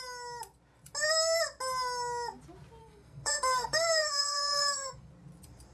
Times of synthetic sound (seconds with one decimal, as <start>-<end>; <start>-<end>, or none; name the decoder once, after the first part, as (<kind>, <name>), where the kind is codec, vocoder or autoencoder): 2.8-5.1 (codec, SNAC)